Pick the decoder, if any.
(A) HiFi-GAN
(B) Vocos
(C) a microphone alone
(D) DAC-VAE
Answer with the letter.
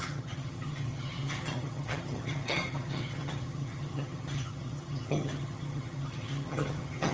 A